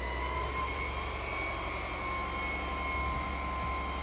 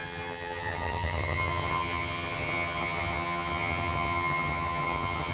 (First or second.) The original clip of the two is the first